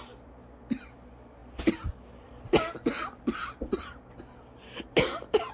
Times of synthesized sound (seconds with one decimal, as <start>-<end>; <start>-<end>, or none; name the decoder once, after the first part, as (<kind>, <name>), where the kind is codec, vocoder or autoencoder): none